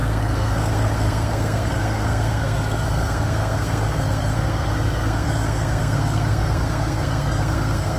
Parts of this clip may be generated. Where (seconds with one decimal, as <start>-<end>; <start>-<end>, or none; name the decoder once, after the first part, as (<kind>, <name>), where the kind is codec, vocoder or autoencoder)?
0.0-8.0 (codec, SNAC)